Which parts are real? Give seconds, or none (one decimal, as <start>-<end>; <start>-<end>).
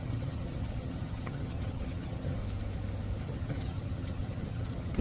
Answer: 2.4-3.2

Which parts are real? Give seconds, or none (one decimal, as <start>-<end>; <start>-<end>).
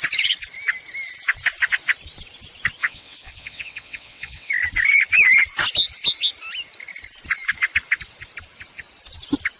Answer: 0.0-2.8; 4.5-9.6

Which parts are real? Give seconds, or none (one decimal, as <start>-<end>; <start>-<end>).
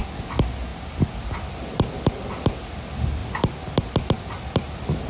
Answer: 0.0-5.1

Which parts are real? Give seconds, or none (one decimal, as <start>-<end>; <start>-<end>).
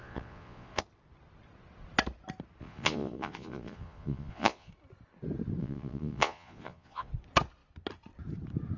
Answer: 0.8-2.6; 4.7-5.6; 7.1-8.8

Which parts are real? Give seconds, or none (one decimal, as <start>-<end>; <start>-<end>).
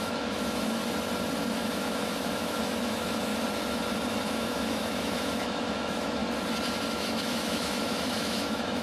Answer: 0.8-1.5; 3.3-4.3; 6.2-6.9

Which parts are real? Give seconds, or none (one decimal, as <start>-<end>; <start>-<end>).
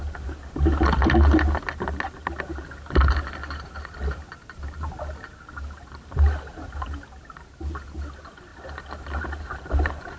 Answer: 0.0-10.2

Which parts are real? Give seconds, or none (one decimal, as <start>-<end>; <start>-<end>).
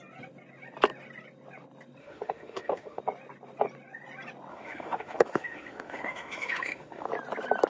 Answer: 0.0-2.0; 3.0-4.5; 7.1-7.7